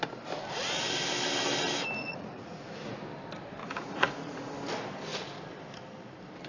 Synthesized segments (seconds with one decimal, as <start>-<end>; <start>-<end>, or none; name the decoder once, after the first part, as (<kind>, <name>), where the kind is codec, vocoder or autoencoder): 2.0-3.0 (vocoder, Vocos); 3.6-4.5